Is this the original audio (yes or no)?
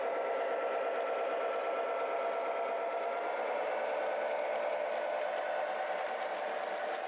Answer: yes